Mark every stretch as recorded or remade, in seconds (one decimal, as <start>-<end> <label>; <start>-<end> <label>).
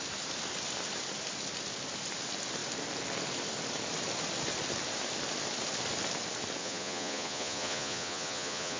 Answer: 0.0-6.6 recorded; 6.6-8.8 remade